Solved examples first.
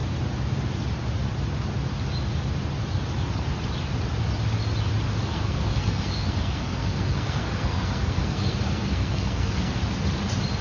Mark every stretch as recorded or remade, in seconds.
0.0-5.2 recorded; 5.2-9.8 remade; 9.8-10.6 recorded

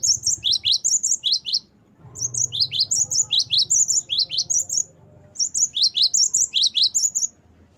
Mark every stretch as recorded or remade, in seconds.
0.0-7.8 recorded

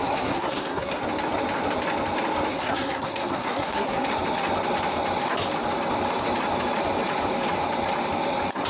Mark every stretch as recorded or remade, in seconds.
0.0-1.0 remade; 1.0-2.5 recorded; 2.5-4.1 remade; 4.1-8.7 recorded